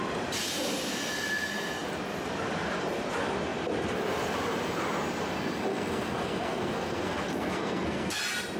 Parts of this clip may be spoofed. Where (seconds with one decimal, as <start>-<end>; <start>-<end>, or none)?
5.7-8.2